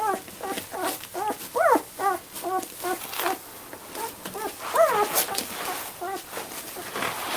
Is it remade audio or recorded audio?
recorded